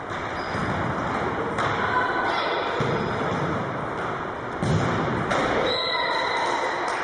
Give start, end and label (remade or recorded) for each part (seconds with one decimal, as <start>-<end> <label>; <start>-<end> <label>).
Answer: 0.0-7.0 recorded